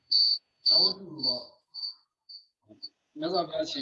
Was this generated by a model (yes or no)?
yes